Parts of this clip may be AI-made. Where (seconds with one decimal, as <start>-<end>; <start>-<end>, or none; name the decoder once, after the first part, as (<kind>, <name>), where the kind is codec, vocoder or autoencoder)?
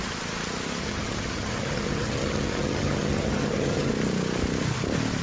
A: 0.8-3.9 (vocoder, HiFi-GAN)